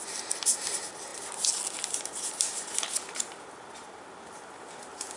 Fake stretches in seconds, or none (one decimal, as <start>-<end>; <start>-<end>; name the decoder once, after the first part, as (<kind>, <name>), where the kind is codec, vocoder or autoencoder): none